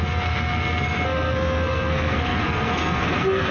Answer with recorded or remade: remade